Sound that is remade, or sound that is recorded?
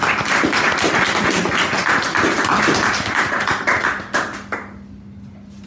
recorded